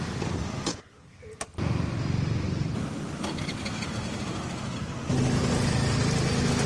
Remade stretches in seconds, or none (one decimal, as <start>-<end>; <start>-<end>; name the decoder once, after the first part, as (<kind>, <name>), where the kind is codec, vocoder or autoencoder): 0.7-1.2 (codec, HILCodec)